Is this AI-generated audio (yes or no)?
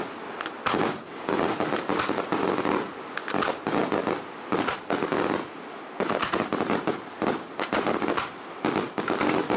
no